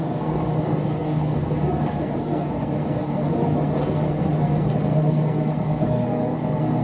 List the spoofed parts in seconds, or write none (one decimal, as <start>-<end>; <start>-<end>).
0.0-6.8